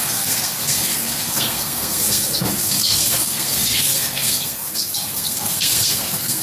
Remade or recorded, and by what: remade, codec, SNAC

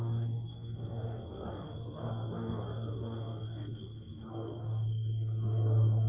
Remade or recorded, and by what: remade, codec, SNAC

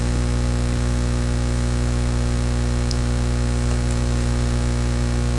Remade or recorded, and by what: recorded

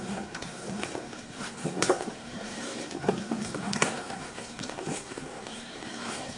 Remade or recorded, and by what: remade, codec, SNAC